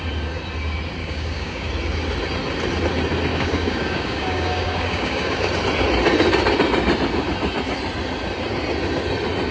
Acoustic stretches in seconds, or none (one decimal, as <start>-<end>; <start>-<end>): 0.0-1.0; 1.7-3.3; 5.5-9.5